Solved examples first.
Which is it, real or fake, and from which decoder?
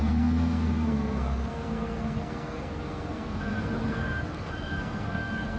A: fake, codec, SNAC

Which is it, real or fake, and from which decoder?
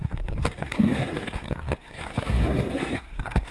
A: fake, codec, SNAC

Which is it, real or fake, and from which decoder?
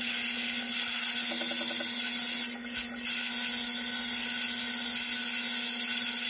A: real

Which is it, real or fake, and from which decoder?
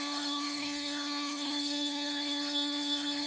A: fake, codec, SNAC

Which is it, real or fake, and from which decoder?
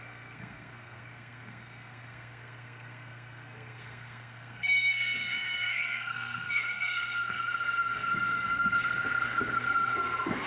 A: fake, codec, SNAC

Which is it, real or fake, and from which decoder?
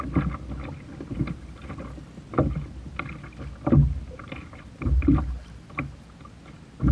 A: real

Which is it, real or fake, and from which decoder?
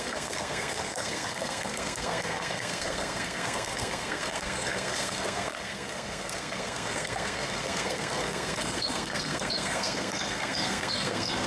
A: fake, codec, SNAC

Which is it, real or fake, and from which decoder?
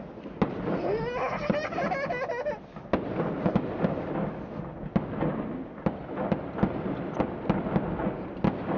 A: real